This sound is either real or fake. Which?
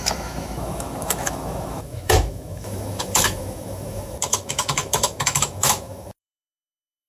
fake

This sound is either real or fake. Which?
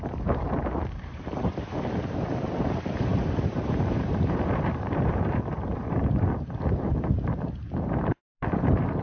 fake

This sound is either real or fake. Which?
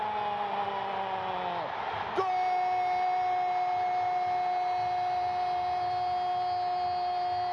real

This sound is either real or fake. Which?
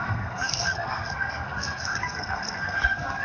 fake